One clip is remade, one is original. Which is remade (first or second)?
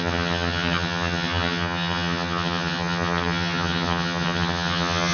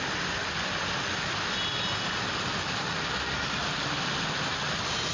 first